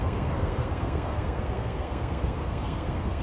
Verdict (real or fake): fake